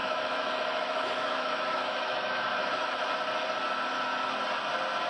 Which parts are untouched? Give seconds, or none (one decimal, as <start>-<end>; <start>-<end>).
3.1-5.1